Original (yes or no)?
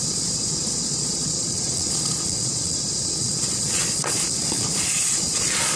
no